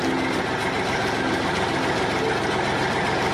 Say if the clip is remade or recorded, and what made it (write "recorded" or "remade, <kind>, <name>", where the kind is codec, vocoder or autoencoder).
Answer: recorded